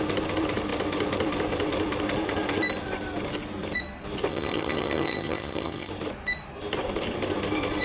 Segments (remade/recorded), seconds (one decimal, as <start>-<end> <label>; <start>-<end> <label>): 0.0-4.3 recorded; 4.3-5.9 remade; 5.9-7.8 recorded